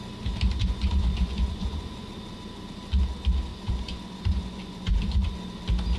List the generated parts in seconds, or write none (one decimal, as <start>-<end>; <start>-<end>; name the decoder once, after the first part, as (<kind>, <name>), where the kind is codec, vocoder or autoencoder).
0.6-2.1 (vocoder, Vocos); 3.5-5.3